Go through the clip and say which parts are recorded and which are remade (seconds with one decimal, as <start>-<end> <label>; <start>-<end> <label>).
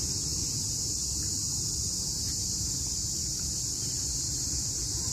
0.0-5.1 recorded